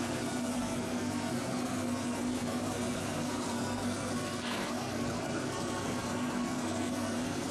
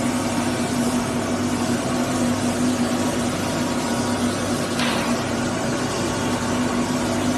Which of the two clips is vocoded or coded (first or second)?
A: first